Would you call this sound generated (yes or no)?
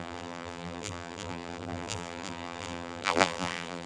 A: yes